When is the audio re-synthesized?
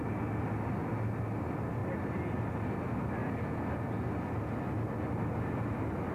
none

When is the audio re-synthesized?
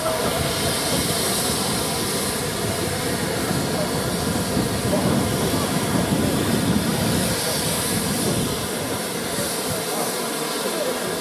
none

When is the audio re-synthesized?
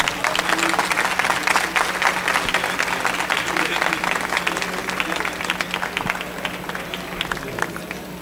none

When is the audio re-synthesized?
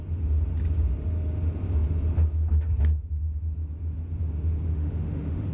4.7-5.5 (autoencoder, DAC-VAE)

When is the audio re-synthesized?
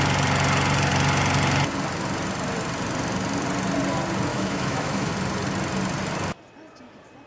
4.3-5.1 (autoencoder, DAC-VAE)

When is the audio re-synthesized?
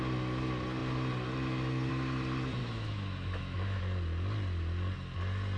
2.6-3.8 (autoencoder, DAC-VAE)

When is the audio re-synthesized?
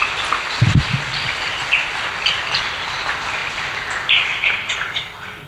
none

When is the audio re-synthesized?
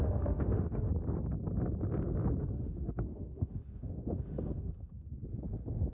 0.0-0.9 (autoencoder, DAC-VAE); 2.4-5.1